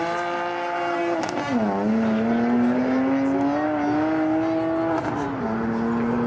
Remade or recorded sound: recorded